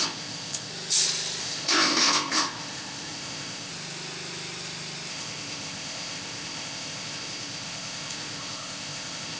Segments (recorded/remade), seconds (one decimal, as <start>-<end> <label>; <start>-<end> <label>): 0.0-0.7 remade; 0.7-1.4 recorded; 1.4-3.7 remade; 3.7-5.1 recorded; 5.1-9.4 remade